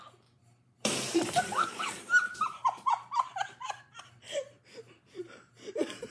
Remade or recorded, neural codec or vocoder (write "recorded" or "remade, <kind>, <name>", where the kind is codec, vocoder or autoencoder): remade, vocoder, BigVGAN v2